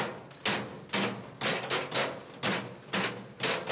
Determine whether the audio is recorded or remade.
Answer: recorded